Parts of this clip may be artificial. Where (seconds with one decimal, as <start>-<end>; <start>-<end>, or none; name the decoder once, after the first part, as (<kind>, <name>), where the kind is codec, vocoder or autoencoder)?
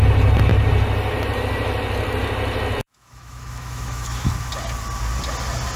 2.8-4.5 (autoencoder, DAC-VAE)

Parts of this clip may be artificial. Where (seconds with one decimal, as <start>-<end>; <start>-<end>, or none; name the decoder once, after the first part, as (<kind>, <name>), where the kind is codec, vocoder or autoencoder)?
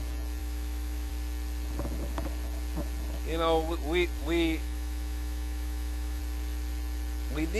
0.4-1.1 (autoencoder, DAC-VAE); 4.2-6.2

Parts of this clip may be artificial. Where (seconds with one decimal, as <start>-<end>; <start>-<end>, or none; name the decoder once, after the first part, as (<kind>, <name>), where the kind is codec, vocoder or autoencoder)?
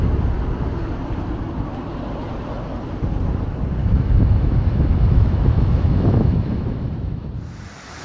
3.8-7.3 (autoencoder, DAC-VAE)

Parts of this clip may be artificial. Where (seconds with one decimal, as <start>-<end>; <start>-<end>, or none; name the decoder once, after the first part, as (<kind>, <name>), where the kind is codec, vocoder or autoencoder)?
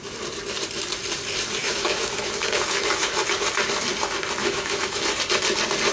1.6-3.1 (autoencoder, DAC-VAE); 4.4-5.0